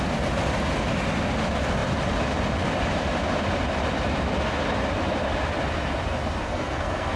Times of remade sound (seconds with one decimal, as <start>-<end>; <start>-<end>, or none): 6.4-7.2